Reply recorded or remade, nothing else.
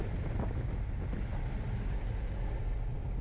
recorded